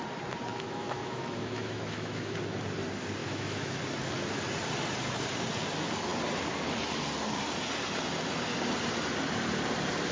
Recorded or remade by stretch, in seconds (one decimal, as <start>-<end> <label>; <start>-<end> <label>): 0.0-0.5 recorded; 0.5-2.4 remade; 2.4-3.2 recorded; 3.2-3.8 remade; 3.8-10.1 recorded